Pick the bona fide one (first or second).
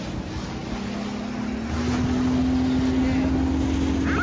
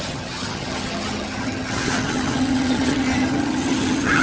first